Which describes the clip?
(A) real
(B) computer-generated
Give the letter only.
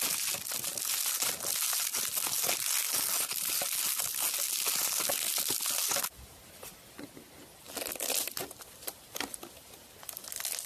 A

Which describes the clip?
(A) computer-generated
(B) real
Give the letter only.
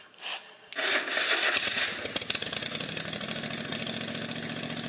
B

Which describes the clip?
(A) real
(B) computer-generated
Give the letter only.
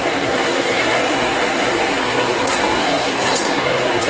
B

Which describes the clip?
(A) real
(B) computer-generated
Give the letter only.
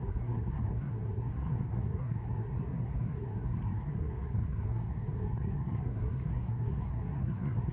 B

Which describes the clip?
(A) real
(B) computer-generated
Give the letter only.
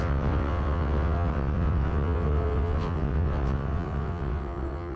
B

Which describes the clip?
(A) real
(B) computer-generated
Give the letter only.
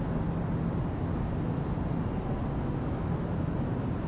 A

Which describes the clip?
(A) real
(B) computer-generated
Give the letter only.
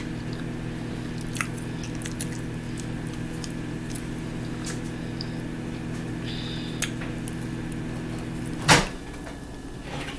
A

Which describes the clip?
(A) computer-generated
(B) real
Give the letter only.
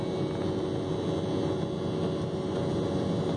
B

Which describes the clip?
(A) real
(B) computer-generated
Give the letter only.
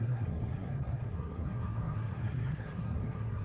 B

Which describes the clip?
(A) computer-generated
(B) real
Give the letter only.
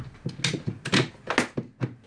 B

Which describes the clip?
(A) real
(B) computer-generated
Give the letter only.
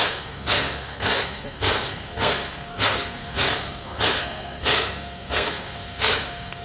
B